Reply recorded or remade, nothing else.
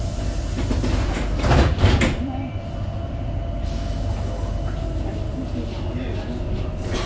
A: recorded